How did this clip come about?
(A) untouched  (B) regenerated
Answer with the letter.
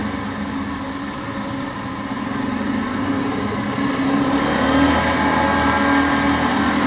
A